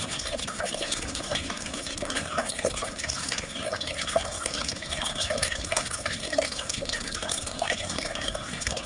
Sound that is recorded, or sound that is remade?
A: remade